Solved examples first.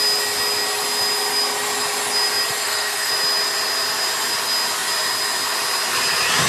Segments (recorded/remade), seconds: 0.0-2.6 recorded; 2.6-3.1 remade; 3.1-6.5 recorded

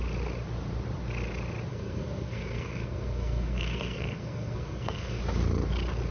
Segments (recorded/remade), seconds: 0.0-1.7 recorded; 1.7-5.2 remade; 5.2-6.1 recorded

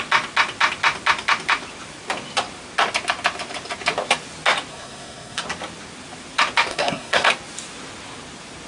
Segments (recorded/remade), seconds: 0.0-4.7 recorded; 4.7-5.4 remade; 5.4-6.7 recorded; 6.7-7.3 remade; 7.3-8.7 recorded

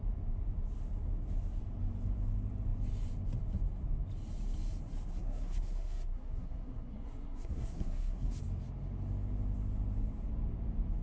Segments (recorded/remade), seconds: 0.0-5.1 recorded; 5.1-8.4 remade; 8.4-11.0 recorded

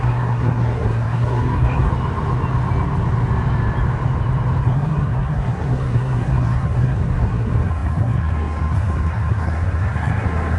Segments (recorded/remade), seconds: 0.0-1.9 remade; 1.9-4.6 recorded; 4.6-10.6 remade